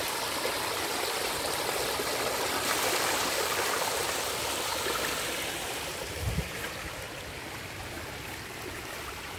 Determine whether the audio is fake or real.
real